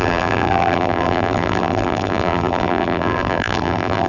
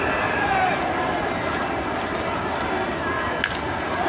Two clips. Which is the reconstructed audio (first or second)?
first